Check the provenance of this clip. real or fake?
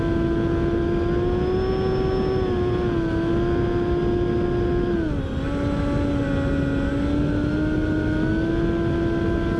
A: real